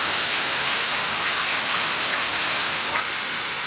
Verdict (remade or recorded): remade